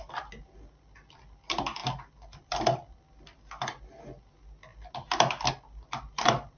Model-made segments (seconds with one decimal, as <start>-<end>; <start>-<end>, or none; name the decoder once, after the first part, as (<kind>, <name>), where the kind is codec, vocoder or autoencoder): 1.8-3.1 (vocoder, BigVGAN v2)